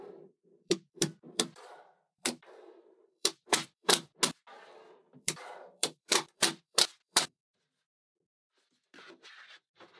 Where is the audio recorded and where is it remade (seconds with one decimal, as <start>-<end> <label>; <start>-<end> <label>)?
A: 0.0-4.1 remade; 4.1-5.0 recorded; 5.0-10.0 remade